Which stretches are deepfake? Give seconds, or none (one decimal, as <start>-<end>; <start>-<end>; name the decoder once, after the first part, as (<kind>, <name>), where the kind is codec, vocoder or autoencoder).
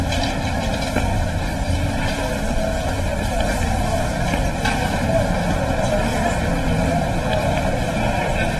0.0-8.6 (vocoder, BigVGAN v2)